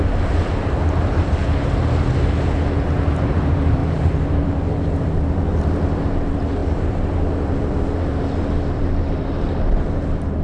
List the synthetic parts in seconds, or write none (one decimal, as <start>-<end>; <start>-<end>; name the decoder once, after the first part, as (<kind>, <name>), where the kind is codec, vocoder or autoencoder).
0.0-1.4 (vocoder, BigVGAN v2); 3.1-10.4